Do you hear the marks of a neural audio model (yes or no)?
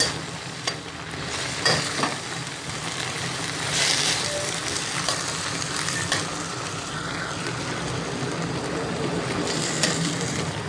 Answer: yes